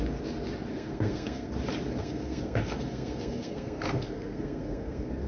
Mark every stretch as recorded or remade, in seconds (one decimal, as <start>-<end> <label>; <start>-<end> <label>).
0.0-0.7 recorded; 0.7-1.5 remade; 1.5-2.0 recorded; 2.0-5.3 remade